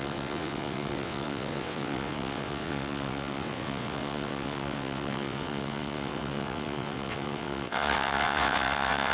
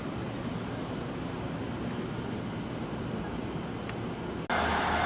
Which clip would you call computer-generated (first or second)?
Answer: first